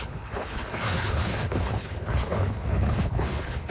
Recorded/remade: remade